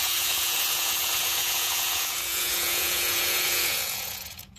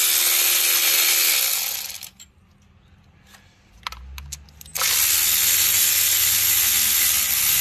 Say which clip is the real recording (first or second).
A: second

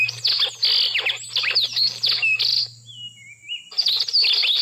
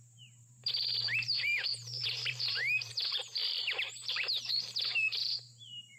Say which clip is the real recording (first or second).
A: first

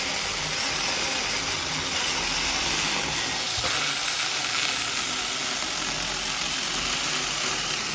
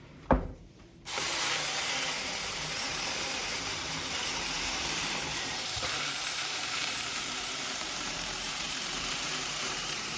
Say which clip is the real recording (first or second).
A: first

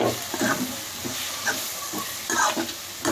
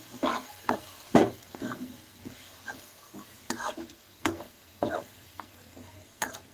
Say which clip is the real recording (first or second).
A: first